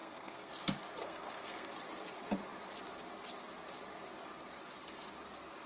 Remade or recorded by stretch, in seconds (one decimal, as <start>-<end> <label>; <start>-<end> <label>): 0.0-0.5 remade; 0.5-1.0 recorded; 1.0-1.7 remade; 1.7-5.7 recorded